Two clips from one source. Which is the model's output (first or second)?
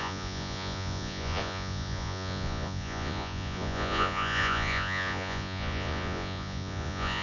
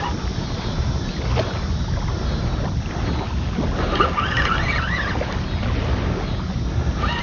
first